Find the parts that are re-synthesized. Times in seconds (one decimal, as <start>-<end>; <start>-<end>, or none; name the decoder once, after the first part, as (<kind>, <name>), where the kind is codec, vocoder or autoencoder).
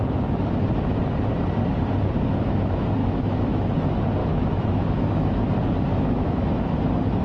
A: 3.0-3.7 (autoencoder, DAC-VAE); 4.2-5.5; 5.9-6.8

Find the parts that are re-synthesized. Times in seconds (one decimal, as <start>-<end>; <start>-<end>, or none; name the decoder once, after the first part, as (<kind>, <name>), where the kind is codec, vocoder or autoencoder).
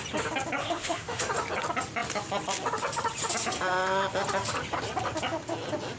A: 0.6-1.2 (autoencoder, DAC-VAE)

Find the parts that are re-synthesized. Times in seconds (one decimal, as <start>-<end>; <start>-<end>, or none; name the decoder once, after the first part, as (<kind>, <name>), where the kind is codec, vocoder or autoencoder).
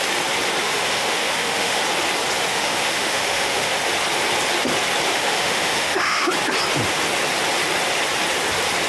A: 0.6-1.8 (autoencoder, DAC-VAE); 2.5-3.8; 5.1-6.3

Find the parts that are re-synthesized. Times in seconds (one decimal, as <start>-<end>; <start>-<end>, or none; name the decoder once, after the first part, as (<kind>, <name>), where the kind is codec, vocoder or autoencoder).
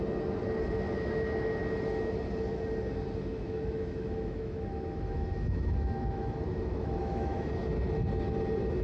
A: 3.3-7.5 (autoencoder, DAC-VAE)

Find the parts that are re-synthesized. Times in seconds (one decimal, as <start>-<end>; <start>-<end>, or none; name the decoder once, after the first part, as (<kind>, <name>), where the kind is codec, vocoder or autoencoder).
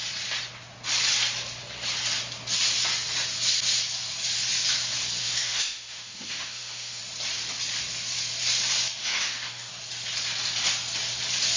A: 5.2-7.0 (autoencoder, DAC-VAE); 9.0-9.7